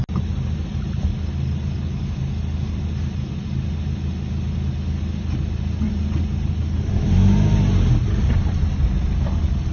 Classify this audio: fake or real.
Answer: real